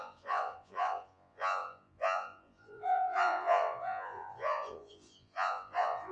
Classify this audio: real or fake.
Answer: fake